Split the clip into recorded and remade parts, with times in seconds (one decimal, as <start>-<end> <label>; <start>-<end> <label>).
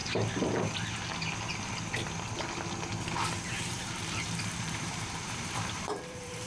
0.0-3.4 recorded; 3.4-6.5 remade